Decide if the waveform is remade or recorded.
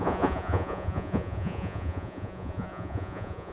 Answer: remade